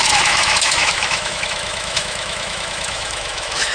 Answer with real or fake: fake